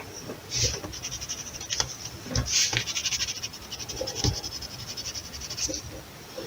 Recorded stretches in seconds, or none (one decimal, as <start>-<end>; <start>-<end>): 0.0-6.5